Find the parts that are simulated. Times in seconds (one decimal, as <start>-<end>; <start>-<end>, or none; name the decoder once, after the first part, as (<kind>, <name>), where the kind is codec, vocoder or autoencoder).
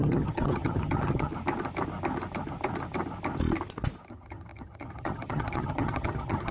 0.0-1.3 (vocoder, HiFi-GAN); 4.1-6.5